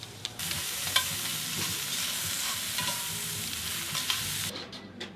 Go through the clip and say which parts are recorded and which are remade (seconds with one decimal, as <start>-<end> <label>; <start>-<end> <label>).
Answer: 0.0-1.3 remade; 1.3-4.4 recorded; 4.4-5.2 remade